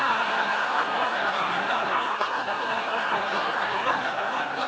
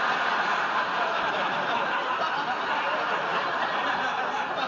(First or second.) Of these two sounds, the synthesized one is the first